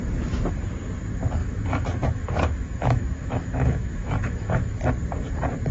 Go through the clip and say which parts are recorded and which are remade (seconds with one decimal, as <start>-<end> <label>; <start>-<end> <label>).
0.0-1.4 recorded; 1.4-4.8 remade; 4.8-5.7 recorded